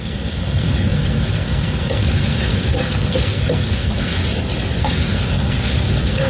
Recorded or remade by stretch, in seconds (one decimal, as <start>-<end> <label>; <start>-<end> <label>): 0.0-4.2 remade; 4.2-4.8 recorded; 4.8-6.3 remade